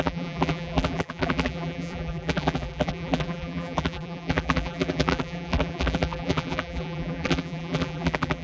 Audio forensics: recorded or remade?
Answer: remade